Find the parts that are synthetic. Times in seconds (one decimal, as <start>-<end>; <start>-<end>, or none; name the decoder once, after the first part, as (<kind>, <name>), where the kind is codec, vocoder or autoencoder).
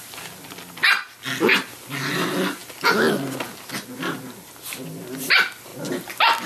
none